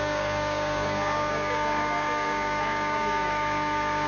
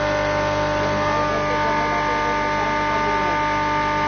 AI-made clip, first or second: first